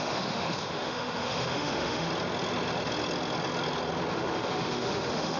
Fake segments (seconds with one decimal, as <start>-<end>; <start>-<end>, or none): 0.0-2.1; 4.1-5.4